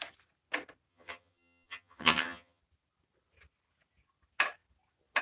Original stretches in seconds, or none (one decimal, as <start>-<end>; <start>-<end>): 0.0-0.9; 2.6-5.2